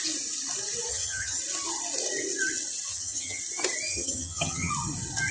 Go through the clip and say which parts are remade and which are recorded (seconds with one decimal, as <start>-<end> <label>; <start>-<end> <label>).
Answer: 0.0-0.9 recorded; 0.9-1.4 remade; 1.4-2.9 recorded; 2.9-3.4 remade; 3.4-3.9 recorded; 3.9-4.7 remade; 4.7-5.3 recorded